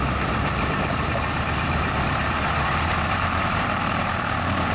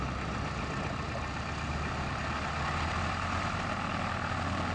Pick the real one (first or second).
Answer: second